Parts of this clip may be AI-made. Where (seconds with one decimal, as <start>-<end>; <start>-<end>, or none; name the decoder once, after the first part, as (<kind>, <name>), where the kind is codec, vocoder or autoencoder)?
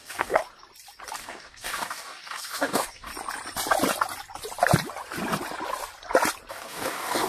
0.0-0.4 (codec, DAC); 1.2-3.1; 6.5-7.3